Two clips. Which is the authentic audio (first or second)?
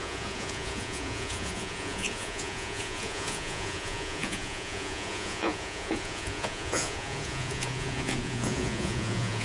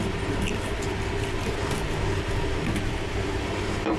second